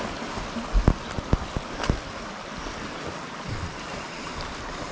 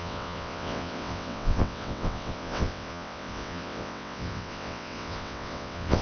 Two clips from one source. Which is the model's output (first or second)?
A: second